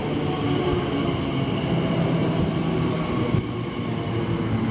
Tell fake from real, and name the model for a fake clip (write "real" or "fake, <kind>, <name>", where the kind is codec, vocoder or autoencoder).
real